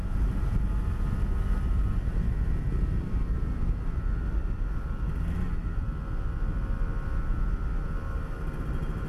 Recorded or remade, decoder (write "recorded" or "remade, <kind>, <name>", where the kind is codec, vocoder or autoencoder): recorded